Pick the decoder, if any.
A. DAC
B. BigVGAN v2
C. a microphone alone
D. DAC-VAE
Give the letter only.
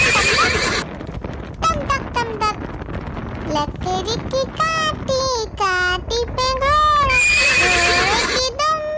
C